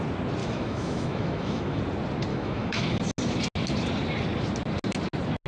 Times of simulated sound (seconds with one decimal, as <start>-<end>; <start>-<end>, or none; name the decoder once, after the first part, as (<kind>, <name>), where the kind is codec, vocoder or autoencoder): 0.4-1.8 (autoencoder, DAC-VAE); 2.3-3.0